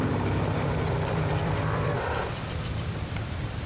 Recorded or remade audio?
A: remade